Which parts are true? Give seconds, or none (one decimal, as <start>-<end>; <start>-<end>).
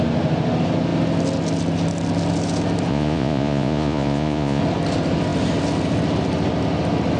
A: 0.0-2.9; 4.6-7.2